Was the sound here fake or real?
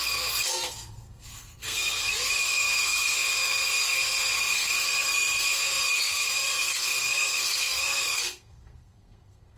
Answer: fake